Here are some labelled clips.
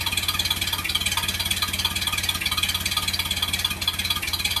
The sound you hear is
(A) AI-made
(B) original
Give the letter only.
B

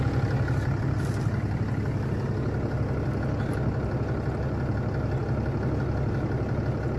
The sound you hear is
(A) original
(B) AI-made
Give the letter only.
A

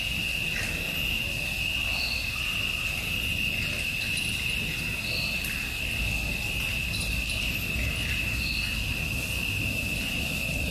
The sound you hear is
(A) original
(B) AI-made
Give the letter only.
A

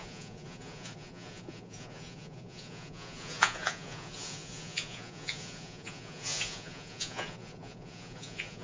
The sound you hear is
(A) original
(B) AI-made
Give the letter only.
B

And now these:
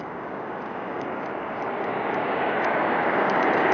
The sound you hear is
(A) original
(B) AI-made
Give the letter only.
B